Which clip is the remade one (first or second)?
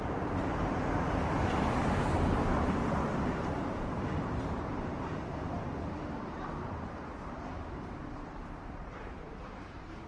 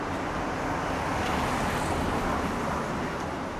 first